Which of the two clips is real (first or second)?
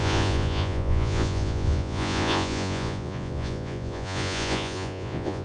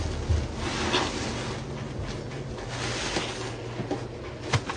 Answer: second